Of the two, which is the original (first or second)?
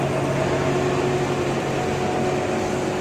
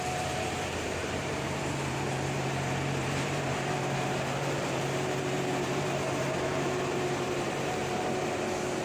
first